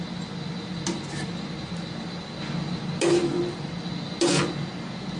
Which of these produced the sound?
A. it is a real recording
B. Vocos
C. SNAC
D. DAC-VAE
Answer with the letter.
A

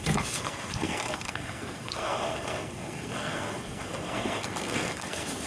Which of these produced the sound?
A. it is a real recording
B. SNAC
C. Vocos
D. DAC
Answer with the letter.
B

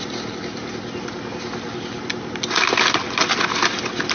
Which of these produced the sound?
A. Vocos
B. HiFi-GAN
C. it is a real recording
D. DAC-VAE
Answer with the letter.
C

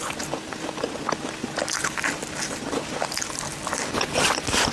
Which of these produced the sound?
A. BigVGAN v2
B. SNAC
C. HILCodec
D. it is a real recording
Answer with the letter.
D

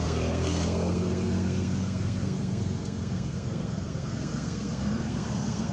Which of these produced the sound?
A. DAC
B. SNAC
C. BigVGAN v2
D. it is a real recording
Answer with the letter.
B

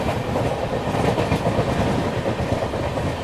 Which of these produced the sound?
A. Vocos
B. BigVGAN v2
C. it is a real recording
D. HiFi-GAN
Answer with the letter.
C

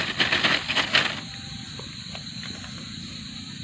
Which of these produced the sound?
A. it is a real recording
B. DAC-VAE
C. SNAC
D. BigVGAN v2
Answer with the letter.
A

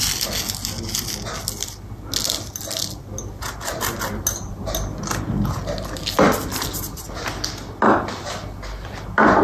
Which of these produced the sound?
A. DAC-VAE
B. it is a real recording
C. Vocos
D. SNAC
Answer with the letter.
B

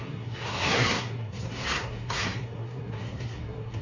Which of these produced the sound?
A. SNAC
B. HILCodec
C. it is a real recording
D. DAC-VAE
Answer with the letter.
A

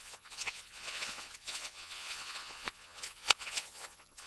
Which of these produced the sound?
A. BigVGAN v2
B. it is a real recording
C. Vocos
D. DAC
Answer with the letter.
C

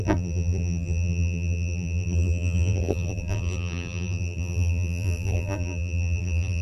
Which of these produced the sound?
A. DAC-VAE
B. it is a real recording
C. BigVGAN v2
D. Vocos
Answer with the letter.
C